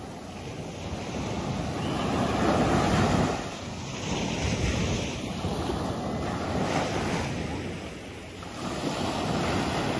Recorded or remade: recorded